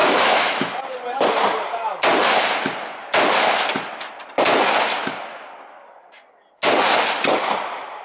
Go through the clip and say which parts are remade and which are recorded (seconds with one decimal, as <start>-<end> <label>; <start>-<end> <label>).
0.0-0.8 remade; 0.8-8.0 recorded